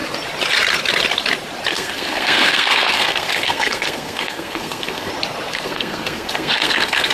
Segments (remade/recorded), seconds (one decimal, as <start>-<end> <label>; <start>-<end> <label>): 0.0-1.7 recorded; 1.7-5.1 remade; 5.1-5.5 recorded; 5.5-7.1 remade